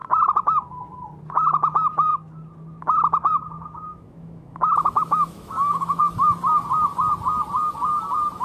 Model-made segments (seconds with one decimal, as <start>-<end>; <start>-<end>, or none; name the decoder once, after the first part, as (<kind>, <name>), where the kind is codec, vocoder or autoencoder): 3.9-6.0 (autoencoder, DAC-VAE)